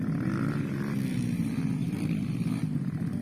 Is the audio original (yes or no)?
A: yes